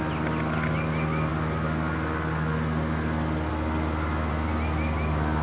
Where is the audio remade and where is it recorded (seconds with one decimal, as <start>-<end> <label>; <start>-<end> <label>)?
0.0-5.4 recorded